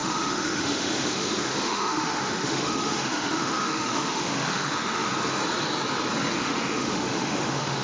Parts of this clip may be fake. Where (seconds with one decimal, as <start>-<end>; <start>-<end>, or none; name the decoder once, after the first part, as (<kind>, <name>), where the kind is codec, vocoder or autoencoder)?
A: 0.0-5.1 (autoencoder, DAC-VAE); 6.4-7.8